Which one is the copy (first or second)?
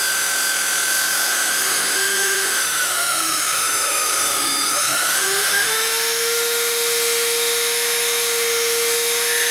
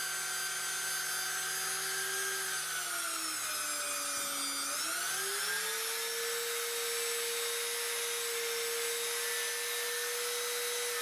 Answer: first